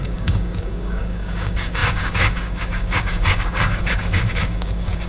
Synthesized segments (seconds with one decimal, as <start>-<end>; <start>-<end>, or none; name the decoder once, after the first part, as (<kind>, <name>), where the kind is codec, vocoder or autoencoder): 0.0-5.1 (codec, DAC)